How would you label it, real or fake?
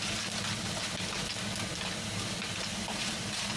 real